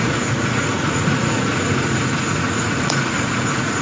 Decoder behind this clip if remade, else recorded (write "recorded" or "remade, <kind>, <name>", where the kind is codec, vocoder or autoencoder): remade, vocoder, Vocos